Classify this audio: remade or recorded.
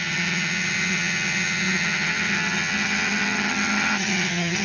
remade